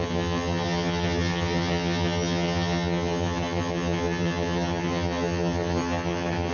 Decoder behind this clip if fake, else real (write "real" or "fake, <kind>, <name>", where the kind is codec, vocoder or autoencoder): fake, vocoder, HiFi-GAN